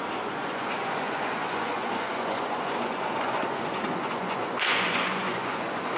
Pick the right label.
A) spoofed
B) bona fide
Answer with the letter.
A